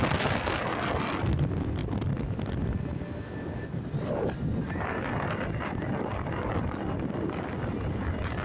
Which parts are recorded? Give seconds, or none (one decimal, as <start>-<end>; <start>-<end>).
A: 0.0-8.4